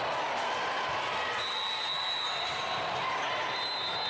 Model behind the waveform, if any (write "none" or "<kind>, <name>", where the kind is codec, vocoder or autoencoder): none